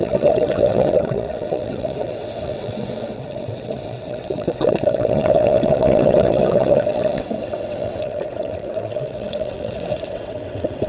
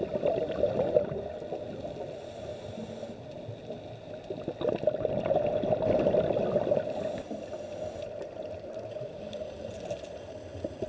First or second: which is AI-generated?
first